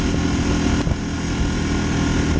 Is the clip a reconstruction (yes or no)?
no